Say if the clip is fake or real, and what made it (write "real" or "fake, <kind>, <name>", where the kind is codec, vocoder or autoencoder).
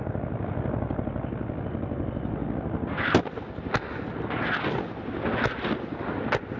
real